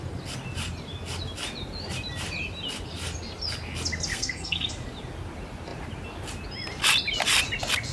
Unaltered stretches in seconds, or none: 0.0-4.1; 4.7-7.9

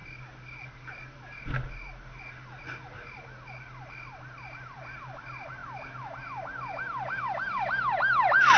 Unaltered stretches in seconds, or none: 0.0-8.6